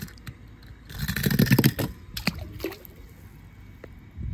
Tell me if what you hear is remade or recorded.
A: recorded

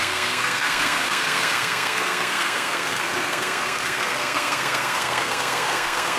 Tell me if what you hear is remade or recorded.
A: remade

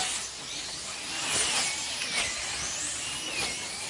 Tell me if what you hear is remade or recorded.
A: recorded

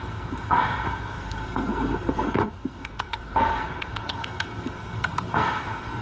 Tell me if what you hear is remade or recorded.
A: remade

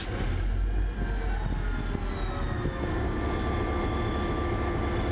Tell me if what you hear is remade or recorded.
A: recorded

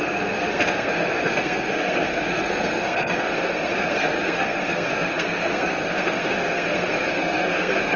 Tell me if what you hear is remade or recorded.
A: remade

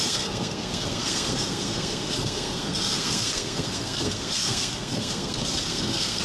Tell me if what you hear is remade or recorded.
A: remade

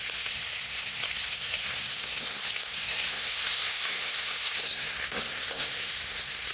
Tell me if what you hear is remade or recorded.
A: remade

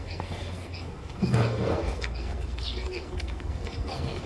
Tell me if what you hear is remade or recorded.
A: remade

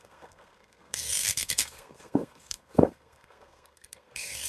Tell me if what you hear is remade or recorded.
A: remade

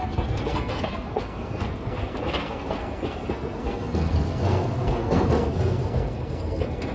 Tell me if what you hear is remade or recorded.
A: remade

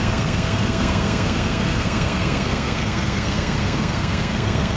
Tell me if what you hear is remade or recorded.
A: remade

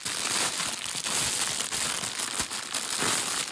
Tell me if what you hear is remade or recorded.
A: recorded